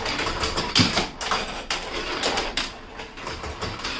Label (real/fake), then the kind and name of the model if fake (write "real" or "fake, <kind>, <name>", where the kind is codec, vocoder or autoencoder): fake, vocoder, BigVGAN v2